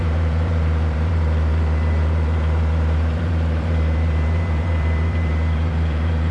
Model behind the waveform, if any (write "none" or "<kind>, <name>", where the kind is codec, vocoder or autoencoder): vocoder, BigVGAN v2